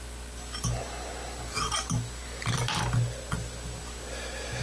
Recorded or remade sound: recorded